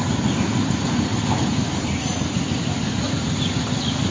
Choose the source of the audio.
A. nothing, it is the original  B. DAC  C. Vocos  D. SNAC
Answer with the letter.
A